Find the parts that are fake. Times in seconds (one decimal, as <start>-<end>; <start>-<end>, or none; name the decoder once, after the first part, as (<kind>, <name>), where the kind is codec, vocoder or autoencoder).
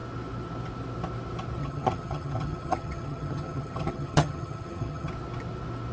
1.6-5.1 (vocoder, HiFi-GAN)